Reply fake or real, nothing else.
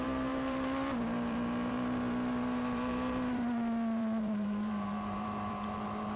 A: fake